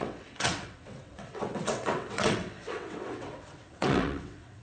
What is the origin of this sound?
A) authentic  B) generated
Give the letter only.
B